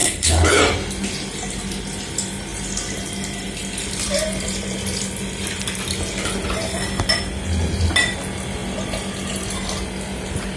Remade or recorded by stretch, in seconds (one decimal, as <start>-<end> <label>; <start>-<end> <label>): 0.0-0.6 remade; 0.6-10.6 recorded